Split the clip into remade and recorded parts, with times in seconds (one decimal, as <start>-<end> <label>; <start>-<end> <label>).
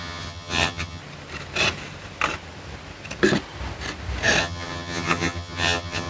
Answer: 0.0-1.0 remade; 1.0-4.4 recorded; 4.4-6.1 remade